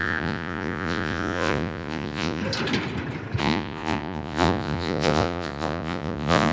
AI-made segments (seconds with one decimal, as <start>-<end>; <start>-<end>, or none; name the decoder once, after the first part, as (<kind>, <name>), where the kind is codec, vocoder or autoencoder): 0.0-2.4 (vocoder, Vocos); 3.4-6.5